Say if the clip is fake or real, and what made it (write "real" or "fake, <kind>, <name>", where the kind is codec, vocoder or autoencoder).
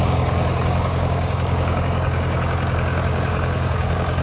fake, codec, DAC